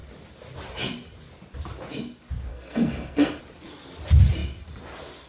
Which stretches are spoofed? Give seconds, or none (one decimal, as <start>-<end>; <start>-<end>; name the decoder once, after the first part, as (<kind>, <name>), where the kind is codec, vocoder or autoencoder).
2.5-3.4 (codec, SNAC)